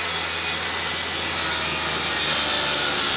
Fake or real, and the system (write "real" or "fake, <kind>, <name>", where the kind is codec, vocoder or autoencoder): real